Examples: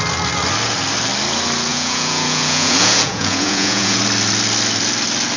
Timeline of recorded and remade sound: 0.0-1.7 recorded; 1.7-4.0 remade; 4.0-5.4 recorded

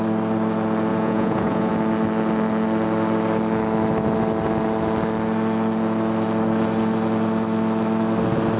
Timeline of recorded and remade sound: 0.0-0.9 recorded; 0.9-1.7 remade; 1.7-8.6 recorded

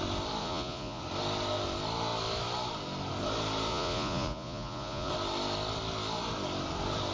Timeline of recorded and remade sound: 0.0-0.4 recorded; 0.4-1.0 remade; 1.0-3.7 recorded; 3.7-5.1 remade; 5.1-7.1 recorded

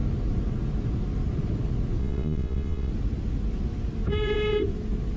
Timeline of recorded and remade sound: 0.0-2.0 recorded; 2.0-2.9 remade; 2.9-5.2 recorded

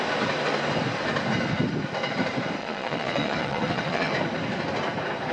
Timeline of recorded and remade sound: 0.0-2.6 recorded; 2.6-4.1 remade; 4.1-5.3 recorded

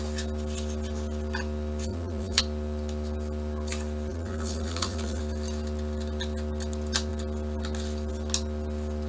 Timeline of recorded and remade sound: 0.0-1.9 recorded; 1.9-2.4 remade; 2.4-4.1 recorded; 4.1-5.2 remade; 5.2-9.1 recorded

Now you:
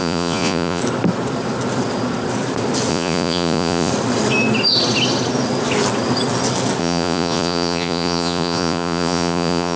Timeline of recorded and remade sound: 0.0-0.8 remade; 0.8-2.9 recorded; 2.9-3.9 remade; 3.9-6.8 recorded; 6.8-9.8 remade

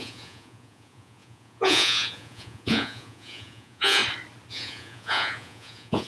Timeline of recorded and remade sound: 0.0-4.0 remade; 4.0-4.5 recorded; 4.5-6.1 remade